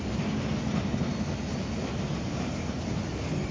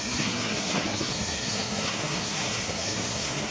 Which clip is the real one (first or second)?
first